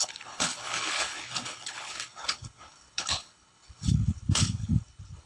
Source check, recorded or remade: remade